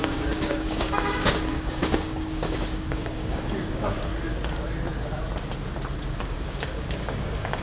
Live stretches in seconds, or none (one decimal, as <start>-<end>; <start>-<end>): 4.1-6.2